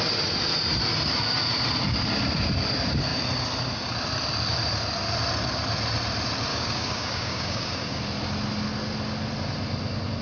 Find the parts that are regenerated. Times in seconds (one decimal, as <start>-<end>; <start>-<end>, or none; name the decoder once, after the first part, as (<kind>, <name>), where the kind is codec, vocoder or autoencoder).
6.5-8.0 (codec, DAC)

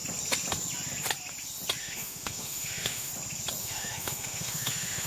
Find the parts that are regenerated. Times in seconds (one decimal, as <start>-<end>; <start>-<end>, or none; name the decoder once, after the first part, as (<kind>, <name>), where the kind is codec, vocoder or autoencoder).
1.8-3.1 (autoencoder, DAC-VAE); 3.6-5.1

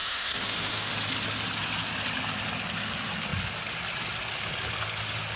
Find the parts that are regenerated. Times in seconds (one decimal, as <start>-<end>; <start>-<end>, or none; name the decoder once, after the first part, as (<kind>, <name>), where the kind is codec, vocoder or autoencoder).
0.0-0.9 (autoencoder, DAC-VAE)

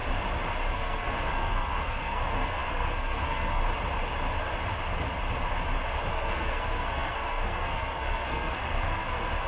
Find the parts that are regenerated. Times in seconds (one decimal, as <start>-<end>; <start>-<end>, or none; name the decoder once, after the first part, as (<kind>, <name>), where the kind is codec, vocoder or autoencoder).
0.7-3.6 (codec, SNAC); 6.1-9.5

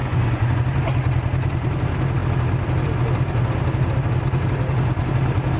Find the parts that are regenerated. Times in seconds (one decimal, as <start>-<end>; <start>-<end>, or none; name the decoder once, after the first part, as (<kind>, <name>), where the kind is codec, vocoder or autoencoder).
0.0-0.6 (vocoder, Vocos)

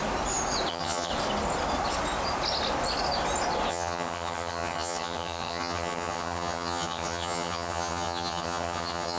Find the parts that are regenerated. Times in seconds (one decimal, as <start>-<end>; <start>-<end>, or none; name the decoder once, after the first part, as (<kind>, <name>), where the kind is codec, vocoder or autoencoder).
0.7-1.1 (vocoder, HiFi-GAN); 3.7-9.2